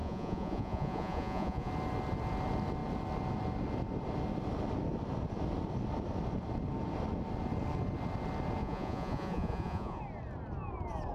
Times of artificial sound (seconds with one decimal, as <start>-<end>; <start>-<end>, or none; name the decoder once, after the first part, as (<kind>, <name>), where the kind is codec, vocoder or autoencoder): 0.0-1.7 (vocoder, Vocos); 8.6-10.0